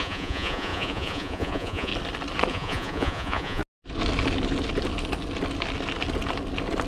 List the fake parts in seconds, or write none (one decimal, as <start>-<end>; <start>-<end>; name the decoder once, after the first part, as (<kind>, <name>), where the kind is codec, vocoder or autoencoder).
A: 0.0-1.9 (vocoder, Vocos); 2.5-3.6